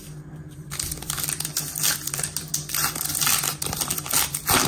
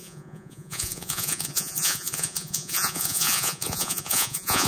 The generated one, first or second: second